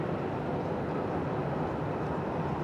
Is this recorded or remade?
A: recorded